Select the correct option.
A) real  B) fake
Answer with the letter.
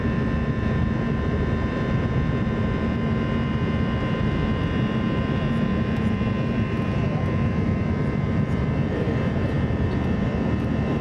B